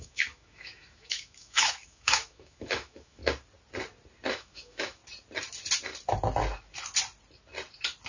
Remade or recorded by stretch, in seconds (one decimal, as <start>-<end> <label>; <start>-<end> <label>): 0.0-3.2 remade; 3.2-4.3 recorded; 4.3-5.0 remade; 5.0-8.1 recorded